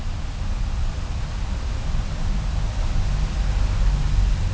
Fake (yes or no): no